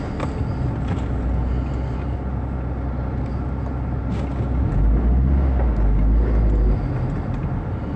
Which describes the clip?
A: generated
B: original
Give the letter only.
B